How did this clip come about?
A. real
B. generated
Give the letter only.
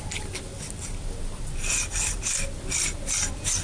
A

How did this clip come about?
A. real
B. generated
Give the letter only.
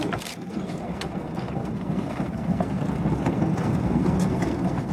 B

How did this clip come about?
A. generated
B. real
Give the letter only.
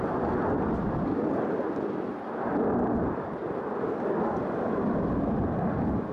B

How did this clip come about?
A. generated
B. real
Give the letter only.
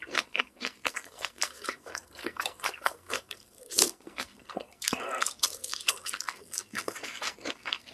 A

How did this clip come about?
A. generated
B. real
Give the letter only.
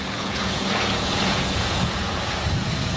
A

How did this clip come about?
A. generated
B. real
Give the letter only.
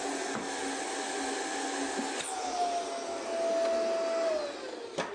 B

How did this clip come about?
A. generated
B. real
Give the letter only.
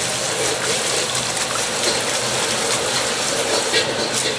B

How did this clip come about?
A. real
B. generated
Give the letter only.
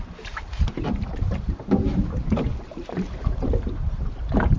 B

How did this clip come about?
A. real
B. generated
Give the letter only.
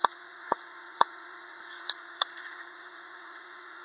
B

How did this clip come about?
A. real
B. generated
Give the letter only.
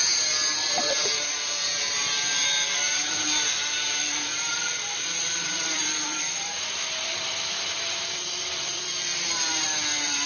B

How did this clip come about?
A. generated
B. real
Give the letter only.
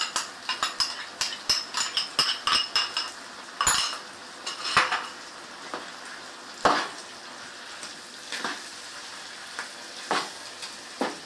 B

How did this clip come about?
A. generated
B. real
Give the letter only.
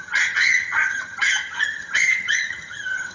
A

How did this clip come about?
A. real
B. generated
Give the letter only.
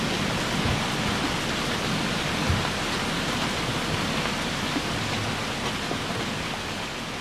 A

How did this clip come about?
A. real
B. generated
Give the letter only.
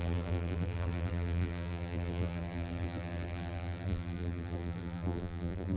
B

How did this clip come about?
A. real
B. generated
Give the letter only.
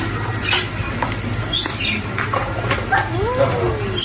A